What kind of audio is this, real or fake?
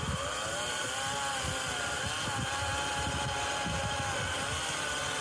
real